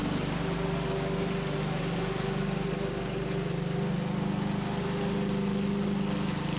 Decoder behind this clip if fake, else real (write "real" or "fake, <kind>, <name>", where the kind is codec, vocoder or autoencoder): real